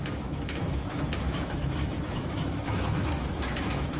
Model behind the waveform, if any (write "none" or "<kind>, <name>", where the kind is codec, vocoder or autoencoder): autoencoder, DAC-VAE